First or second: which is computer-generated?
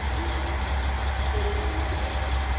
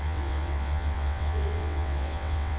second